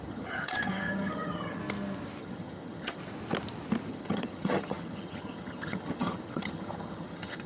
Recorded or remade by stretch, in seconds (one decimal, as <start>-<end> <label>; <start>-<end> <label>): 0.0-1.6 remade; 1.6-2.2 recorded; 2.2-3.0 remade; 3.0-3.9 recorded; 3.9-7.5 remade